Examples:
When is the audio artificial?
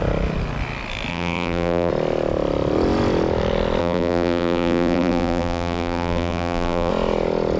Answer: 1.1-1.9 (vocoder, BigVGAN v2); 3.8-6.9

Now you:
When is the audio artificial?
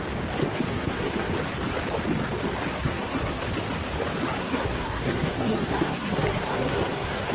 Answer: 0.4-1.3 (codec, SNAC); 2.7-3.5; 4.4-7.3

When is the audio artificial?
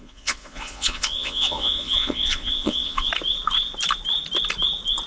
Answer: 0.0-3.1 (vocoder, Vocos)